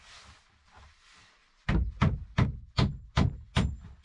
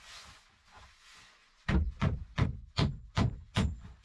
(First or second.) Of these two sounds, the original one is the first